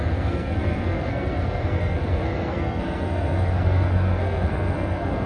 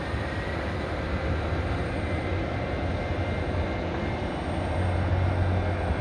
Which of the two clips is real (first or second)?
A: second